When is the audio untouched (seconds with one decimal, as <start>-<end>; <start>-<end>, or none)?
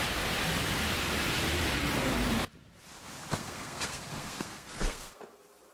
0.0-3.4; 5.2-5.7